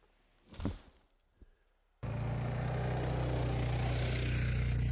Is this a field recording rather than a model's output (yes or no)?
yes